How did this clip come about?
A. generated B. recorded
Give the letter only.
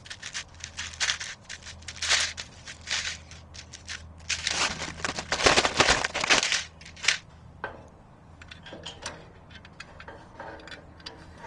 B